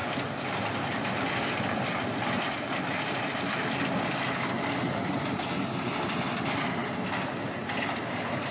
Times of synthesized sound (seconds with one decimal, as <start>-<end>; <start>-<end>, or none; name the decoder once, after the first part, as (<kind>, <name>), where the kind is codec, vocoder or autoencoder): 0.0-6.8 (vocoder, BigVGAN v2); 8.0-8.5